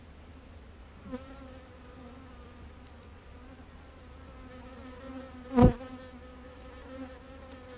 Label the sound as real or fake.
real